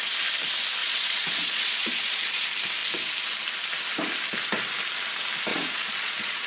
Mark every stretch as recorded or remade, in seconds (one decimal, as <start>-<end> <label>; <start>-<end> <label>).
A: 0.0-0.8 recorded; 0.8-2.4 remade; 2.4-5.5 recorded; 5.5-6.5 remade